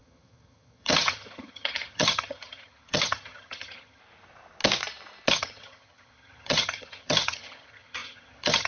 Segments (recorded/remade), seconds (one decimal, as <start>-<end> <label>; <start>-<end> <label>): 0.0-4.0 remade; 4.0-5.3 recorded; 5.3-8.7 remade